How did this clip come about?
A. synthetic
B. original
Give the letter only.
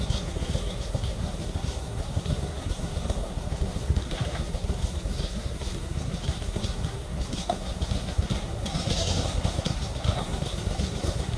A